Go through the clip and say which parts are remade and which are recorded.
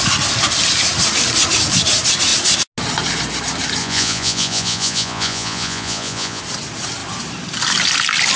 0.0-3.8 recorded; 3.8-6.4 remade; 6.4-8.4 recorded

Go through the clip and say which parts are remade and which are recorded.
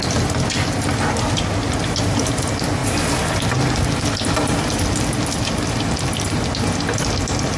0.0-7.6 recorded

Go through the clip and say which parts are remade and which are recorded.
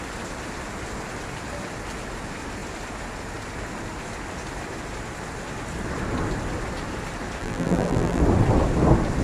0.0-7.4 recorded; 7.4-8.2 remade; 8.2-9.2 recorded